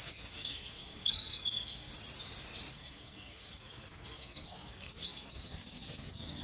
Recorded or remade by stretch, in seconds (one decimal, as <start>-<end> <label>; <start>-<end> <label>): 0.0-1.9 remade; 1.9-2.7 recorded; 2.7-6.4 remade